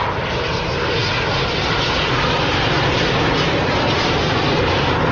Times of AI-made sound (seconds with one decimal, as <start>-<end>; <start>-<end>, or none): none